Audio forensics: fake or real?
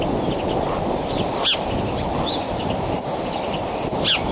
real